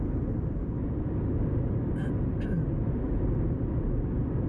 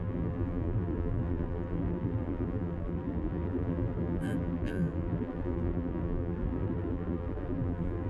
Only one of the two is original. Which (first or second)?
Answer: first